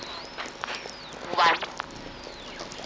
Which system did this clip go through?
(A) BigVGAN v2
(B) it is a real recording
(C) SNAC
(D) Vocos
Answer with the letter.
B